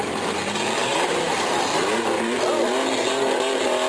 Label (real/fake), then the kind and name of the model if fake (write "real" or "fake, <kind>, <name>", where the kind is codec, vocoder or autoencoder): fake, vocoder, BigVGAN v2